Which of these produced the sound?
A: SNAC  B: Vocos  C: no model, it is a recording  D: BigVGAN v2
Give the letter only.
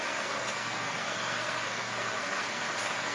A